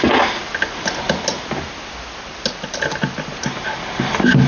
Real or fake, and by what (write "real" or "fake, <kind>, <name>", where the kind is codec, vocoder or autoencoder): real